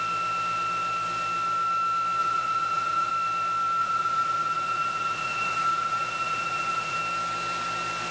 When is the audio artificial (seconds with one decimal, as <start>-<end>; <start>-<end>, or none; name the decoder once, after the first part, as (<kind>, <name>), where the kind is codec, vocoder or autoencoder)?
2.2-3.1 (vocoder, Vocos); 3.8-7.0

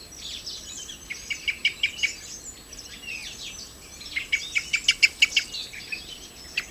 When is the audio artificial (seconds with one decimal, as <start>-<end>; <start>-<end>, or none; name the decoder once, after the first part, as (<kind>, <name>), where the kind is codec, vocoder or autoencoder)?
none

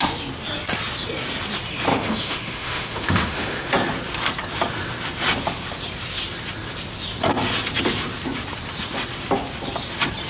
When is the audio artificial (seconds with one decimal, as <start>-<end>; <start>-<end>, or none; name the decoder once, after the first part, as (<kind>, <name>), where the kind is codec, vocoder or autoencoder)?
1.9-3.7 (autoencoder, DAC-VAE)

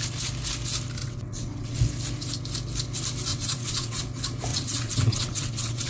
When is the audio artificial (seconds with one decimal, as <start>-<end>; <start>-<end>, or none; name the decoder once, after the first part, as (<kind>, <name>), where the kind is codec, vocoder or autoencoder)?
1.0-1.8 (vocoder, WaveNeXt); 3.3-4.0; 4.5-5.9

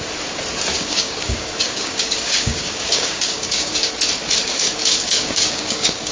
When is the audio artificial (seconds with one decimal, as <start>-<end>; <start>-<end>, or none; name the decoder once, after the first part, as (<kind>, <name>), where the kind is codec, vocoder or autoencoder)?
0.7-3.9 (codec, DAC); 4.5-6.1

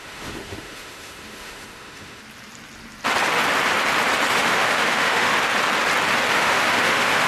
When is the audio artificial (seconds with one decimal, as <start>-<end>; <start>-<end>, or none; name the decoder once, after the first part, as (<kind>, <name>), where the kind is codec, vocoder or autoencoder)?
0.0-2.2 (autoencoder, DAC-VAE); 4.3-5.3; 6.3-7.3

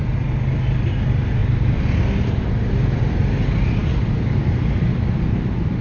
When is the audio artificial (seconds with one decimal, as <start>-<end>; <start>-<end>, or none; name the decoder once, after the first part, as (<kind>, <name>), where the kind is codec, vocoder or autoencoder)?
3.8-5.8 (vocoder, BigVGAN v2)

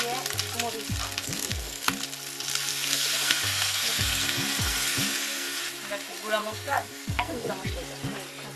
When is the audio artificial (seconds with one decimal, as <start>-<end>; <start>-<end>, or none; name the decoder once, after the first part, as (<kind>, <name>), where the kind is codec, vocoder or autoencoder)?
1.2-1.9 (codec, SNAC); 2.7-5.6; 6.4-7.5